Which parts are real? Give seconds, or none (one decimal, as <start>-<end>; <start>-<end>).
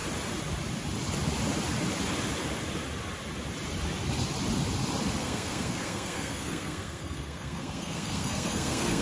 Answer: 0.0-5.2